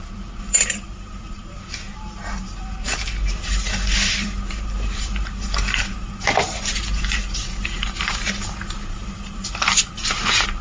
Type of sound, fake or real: fake